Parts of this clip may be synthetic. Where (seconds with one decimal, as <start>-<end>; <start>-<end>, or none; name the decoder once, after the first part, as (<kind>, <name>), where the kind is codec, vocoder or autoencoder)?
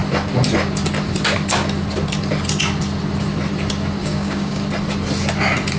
4.0-4.6 (codec, DAC)